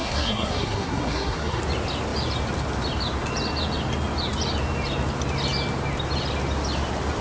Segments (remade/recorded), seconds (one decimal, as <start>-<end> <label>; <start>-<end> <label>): 0.0-1.6 remade; 1.6-7.2 recorded